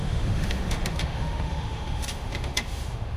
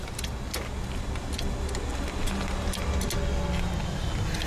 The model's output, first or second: first